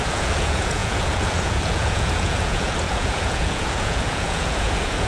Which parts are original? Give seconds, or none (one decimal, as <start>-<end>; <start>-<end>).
none